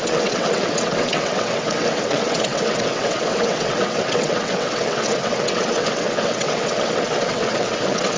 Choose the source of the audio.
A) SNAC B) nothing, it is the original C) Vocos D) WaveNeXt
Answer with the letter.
D